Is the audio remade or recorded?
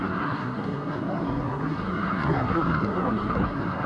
remade